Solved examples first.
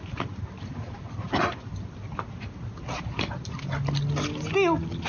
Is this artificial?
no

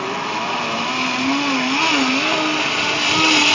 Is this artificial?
no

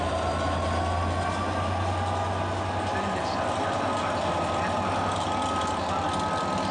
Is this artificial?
no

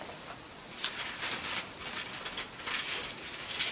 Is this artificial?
no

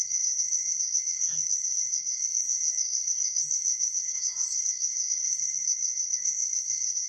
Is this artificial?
yes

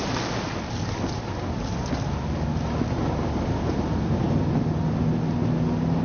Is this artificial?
no